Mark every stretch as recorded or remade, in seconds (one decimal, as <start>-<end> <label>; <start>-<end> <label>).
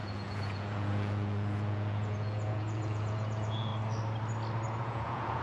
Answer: 0.0-3.7 remade; 3.7-4.8 recorded; 4.8-5.4 remade